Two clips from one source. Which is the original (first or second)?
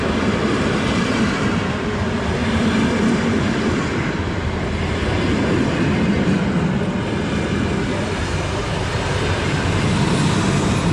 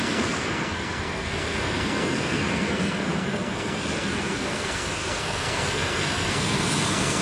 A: first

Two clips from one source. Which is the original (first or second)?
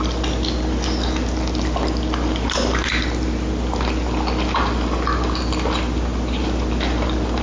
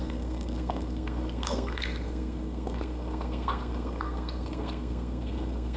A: first